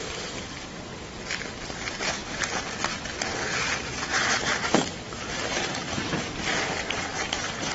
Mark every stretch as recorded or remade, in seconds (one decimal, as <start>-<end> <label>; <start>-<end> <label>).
0.0-0.9 remade; 0.9-1.6 recorded; 1.6-2.2 remade; 2.2-4.1 recorded; 4.1-7.7 remade